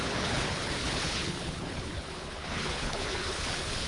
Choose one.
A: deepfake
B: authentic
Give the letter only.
A